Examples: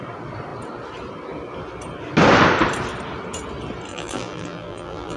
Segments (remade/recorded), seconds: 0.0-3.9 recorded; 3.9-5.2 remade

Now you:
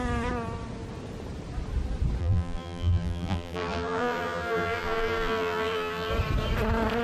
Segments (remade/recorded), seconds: 0.0-2.2 recorded; 2.2-6.1 remade; 6.1-7.0 recorded

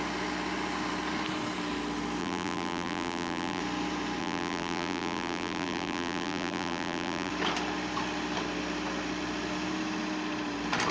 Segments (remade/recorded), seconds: 0.0-2.2 recorded; 2.2-3.6 remade; 3.6-4.2 recorded; 4.2-7.3 remade; 7.3-10.9 recorded